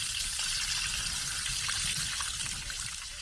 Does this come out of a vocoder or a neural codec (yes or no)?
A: no